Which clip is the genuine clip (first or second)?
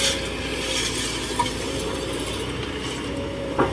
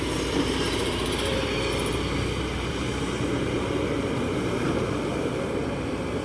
first